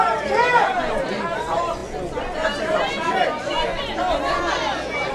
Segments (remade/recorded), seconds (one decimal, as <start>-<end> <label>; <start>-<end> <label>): 0.0-5.1 recorded